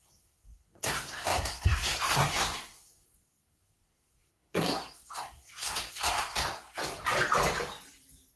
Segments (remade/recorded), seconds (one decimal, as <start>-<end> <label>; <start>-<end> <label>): 0.0-6.8 remade; 6.8-8.4 recorded